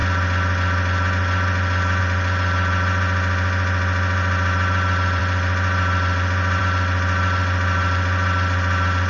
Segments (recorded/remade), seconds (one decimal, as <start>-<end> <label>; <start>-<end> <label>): 0.0-9.1 recorded